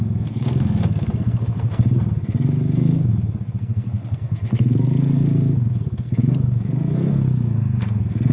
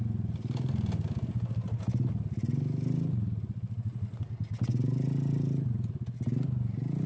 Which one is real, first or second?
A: second